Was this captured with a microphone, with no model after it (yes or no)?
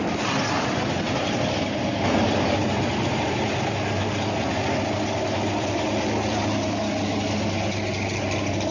yes